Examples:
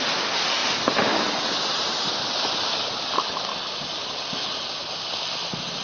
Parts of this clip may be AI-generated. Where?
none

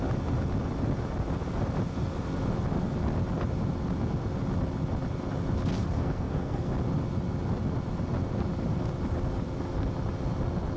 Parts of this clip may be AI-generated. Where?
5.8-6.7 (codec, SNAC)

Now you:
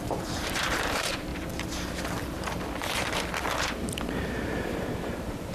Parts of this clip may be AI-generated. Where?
0.0-1.3 (vocoder, BigVGAN v2); 4.6-5.5

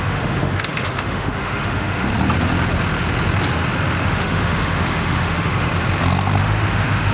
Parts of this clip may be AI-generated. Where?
0.0-2.1 (autoencoder, DAC-VAE); 4.0-5.7; 6.4-7.1

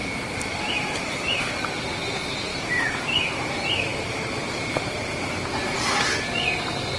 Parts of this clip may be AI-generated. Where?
0.0-1.4 (vocoder, BigVGAN v2); 2.5-3.4